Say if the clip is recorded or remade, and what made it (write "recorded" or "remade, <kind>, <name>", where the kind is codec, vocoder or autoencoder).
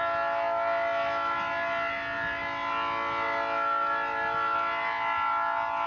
recorded